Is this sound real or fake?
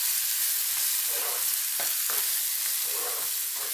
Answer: real